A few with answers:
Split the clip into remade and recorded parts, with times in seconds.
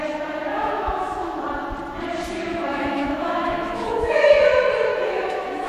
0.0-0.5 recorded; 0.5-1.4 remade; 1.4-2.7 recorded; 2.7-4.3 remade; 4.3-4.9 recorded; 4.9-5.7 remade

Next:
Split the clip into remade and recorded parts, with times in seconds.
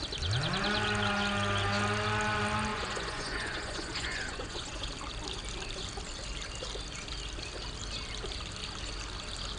0.0-2.7 recorded; 2.7-4.9 remade; 4.9-9.6 recorded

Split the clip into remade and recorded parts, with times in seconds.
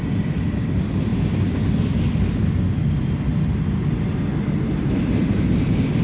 0.0-6.0 recorded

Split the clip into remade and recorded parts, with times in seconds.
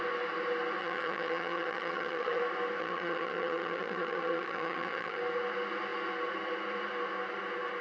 0.0-0.8 recorded; 0.8-2.4 remade; 2.4-2.8 recorded; 2.8-5.2 remade; 5.2-7.8 recorded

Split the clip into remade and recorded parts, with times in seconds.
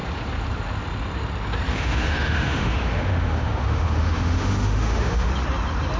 0.0-1.7 recorded; 1.7-5.3 remade; 5.3-6.0 recorded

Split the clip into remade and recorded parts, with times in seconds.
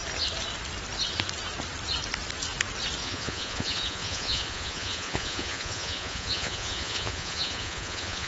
0.0-3.0 recorded; 3.0-8.3 remade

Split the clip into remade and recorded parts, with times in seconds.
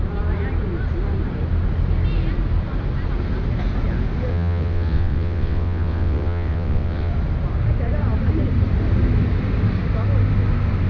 0.0-4.3 recorded; 4.3-7.1 remade; 7.1-10.9 recorded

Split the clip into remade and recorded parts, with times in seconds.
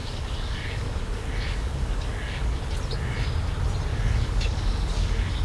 0.0-2.6 remade; 2.6-3.9 recorded; 3.9-5.4 remade